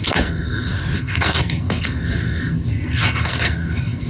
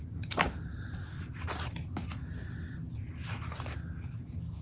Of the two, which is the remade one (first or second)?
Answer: first